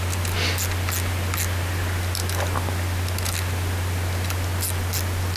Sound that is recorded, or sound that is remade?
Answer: recorded